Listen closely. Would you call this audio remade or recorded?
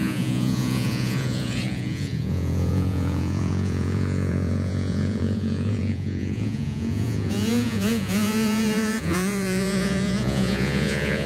remade